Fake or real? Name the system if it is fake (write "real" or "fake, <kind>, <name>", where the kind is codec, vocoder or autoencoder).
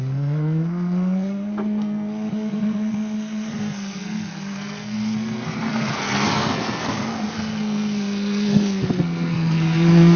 fake, codec, SNAC